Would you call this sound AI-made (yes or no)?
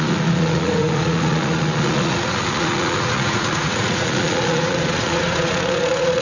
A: yes